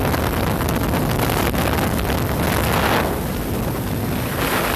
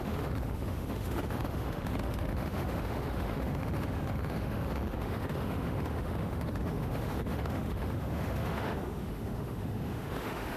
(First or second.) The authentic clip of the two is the first